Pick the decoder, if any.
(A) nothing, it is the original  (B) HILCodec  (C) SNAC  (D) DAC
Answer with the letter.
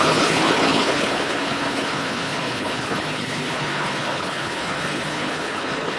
B